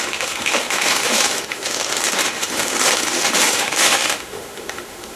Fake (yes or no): yes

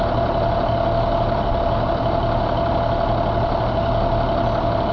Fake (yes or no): no